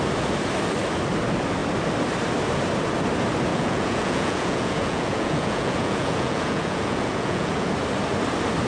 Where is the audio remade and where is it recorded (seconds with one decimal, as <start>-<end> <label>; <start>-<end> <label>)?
0.0-3.5 recorded; 3.5-7.7 remade; 7.7-8.7 recorded